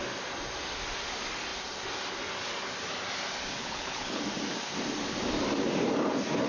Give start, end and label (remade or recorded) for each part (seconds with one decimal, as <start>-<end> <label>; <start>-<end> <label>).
0.0-3.6 recorded; 3.6-4.2 remade; 4.2-6.5 recorded